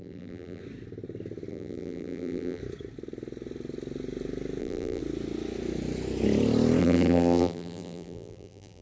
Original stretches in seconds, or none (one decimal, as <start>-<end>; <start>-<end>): 0.6-1.5; 2.6-4.6; 5.0-6.8